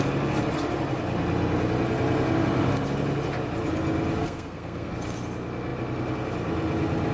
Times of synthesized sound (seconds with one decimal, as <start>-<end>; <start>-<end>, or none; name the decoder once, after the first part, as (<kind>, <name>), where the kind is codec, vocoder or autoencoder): 4.2-4.9 (codec, SNAC)

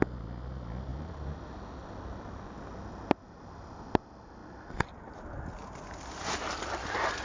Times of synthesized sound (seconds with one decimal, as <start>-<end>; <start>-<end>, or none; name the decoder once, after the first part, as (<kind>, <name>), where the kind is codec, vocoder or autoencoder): none

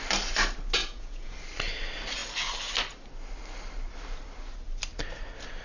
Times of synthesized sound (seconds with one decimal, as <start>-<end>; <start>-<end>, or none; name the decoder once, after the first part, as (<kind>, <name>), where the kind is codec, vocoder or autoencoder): 0.8-1.3 (vocoder, Vocos)

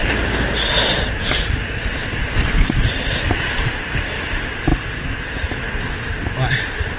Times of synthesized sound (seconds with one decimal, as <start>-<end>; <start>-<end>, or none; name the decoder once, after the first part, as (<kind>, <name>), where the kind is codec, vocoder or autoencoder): none

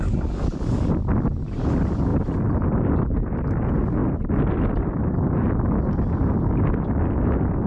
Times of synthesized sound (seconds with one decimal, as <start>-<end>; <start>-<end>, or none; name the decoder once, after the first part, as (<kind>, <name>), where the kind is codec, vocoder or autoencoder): none